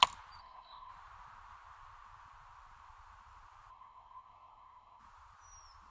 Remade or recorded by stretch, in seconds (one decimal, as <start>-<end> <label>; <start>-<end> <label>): 0.0-0.4 recorded; 0.4-0.9 remade; 0.9-3.7 recorded; 3.7-5.0 remade; 5.0-5.9 recorded